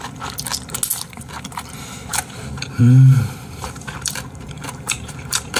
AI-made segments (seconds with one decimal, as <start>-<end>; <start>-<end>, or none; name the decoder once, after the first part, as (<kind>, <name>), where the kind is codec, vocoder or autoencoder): 2.1-5.6 (vocoder, BigVGAN v2)